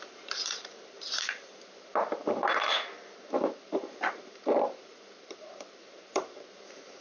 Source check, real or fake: fake